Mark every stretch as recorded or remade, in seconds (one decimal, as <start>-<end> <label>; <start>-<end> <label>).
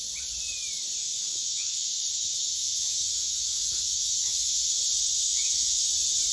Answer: 0.0-1.0 recorded; 1.0-4.8 remade; 4.8-5.3 recorded; 5.3-5.8 remade; 5.8-6.3 recorded